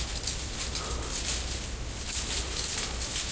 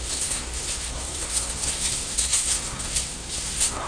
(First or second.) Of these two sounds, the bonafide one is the first